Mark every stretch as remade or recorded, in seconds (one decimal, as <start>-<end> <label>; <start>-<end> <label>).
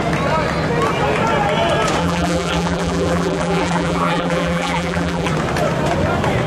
0.0-2.0 recorded; 2.0-5.3 remade; 5.3-6.5 recorded